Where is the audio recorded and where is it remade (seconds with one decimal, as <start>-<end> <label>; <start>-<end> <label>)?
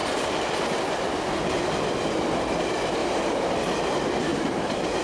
0.0-3.0 recorded; 3.0-3.6 remade; 3.6-4.3 recorded; 4.3-5.0 remade